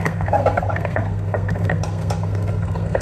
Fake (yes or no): yes